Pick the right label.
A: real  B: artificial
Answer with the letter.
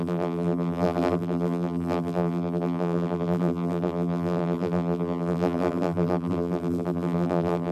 B